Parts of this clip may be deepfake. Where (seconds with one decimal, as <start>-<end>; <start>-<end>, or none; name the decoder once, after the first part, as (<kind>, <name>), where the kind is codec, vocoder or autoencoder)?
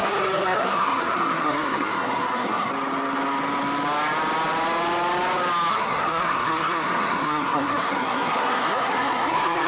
0.0-2.7 (codec, SNAC); 5.7-9.7